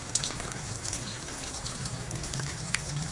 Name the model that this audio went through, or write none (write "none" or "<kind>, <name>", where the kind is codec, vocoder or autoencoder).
codec, SNAC